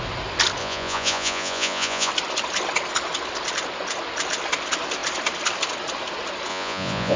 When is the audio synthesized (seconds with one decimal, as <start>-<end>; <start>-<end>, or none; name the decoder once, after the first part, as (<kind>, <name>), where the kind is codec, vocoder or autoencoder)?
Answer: 0.6-2.1 (vocoder, Vocos); 6.5-7.2